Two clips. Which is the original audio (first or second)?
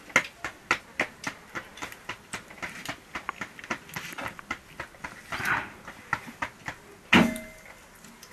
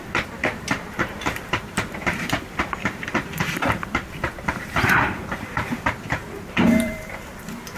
first